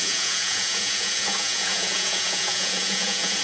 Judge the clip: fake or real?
fake